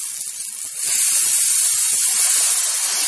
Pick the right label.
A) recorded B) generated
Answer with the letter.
A